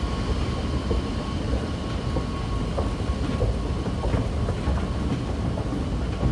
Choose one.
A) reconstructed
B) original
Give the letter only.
B